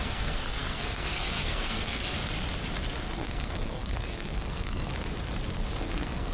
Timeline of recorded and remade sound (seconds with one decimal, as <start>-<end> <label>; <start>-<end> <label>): 0.0-2.0 remade; 2.0-3.1 recorded; 3.1-4.9 remade; 4.9-5.8 recorded; 5.8-6.3 remade